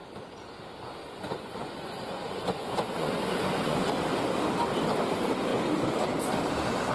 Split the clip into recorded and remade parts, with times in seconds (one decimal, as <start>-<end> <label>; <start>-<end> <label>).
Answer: 0.0-1.0 recorded; 1.0-3.9 remade; 3.9-6.9 recorded